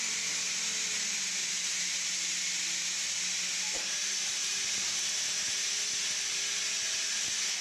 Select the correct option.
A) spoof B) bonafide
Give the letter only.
B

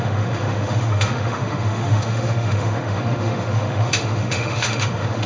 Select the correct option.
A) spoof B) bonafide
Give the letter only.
A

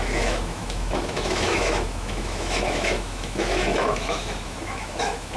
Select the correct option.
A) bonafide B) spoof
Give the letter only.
B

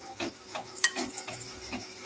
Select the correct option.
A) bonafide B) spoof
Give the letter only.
B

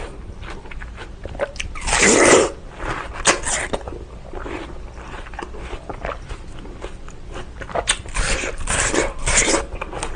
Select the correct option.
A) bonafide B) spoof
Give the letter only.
A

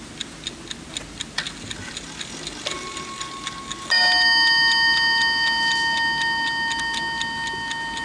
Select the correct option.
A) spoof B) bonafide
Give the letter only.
B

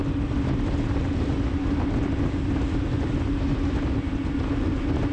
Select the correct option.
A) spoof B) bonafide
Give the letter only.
B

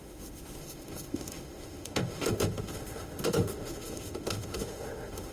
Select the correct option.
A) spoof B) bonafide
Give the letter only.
A